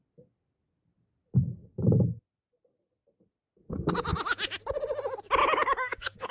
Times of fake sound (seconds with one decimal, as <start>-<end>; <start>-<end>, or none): 5.4-6.3